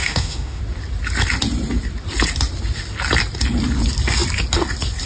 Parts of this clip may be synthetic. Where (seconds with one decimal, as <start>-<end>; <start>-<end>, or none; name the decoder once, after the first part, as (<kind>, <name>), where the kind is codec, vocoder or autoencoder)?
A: 0.0-0.6 (autoencoder, DAC-VAE)

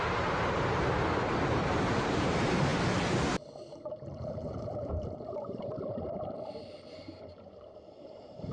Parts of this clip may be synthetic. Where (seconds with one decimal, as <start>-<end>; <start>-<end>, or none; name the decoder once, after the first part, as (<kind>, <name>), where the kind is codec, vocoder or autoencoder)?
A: 0.0-8.5 (vocoder, BigVGAN v2)

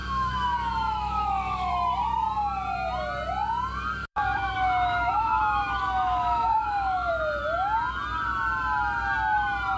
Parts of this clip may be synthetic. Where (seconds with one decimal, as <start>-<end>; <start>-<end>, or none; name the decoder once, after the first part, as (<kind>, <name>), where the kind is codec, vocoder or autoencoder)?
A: 0.0-1.7 (autoencoder, DAC-VAE); 4.0-7.1

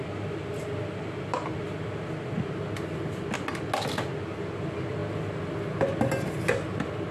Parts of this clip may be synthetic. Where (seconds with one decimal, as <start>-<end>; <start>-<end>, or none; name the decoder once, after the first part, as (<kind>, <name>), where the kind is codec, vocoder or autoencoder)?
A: none

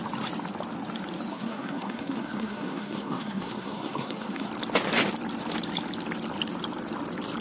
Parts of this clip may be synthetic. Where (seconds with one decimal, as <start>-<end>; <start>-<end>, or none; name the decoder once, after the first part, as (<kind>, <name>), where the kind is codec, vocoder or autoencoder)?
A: 1.3-4.5 (codec, SNAC)

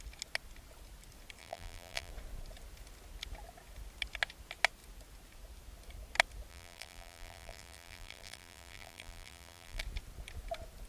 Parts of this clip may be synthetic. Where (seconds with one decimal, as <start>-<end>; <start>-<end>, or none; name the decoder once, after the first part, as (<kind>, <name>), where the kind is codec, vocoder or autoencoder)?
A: 1.4-2.1 (vocoder, BigVGAN v2); 6.5-9.8